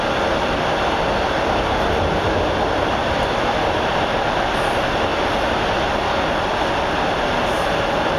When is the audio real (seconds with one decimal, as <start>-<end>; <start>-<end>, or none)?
0.0-8.2